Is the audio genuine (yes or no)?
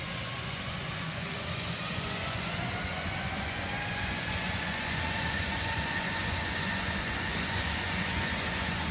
no